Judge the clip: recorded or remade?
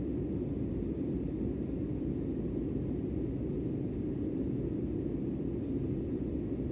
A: recorded